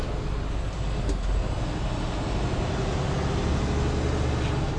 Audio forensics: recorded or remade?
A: recorded